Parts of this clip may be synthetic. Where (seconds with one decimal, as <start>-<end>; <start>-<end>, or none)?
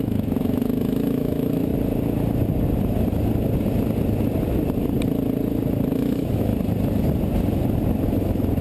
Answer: 0.0-1.7; 5.9-6.5; 8.2-8.6